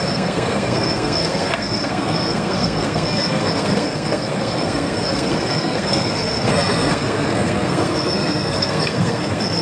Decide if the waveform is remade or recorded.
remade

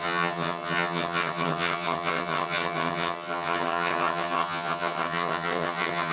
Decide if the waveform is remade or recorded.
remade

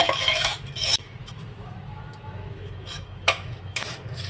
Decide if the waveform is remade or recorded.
remade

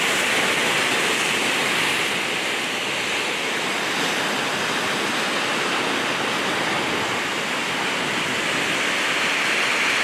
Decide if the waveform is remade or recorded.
recorded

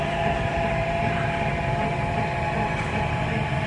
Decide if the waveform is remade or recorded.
remade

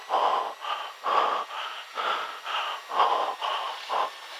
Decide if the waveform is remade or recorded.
recorded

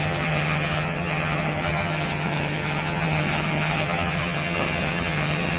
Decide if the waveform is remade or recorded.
remade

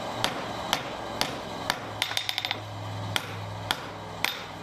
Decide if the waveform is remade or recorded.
recorded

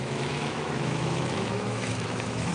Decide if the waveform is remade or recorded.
remade